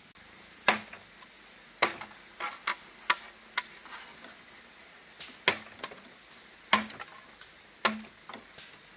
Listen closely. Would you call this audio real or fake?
real